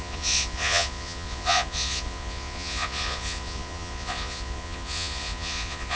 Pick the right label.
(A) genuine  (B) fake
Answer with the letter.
B